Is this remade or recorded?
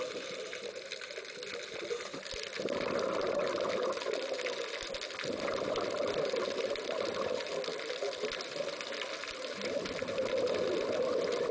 recorded